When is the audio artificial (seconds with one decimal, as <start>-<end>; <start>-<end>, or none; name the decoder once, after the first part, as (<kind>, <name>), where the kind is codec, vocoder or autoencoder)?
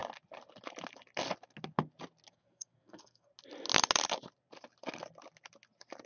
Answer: 2.3-3.3 (codec, SNAC)